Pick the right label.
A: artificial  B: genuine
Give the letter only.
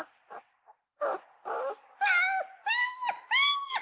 B